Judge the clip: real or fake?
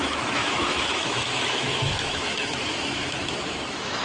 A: fake